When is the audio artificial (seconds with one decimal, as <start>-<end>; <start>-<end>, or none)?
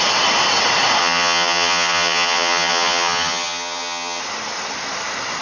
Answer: 1.0-4.2